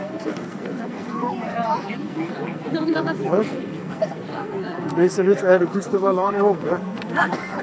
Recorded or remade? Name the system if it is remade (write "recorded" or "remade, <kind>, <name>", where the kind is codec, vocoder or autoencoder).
remade, codec, SNAC